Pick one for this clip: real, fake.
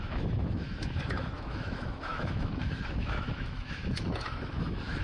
fake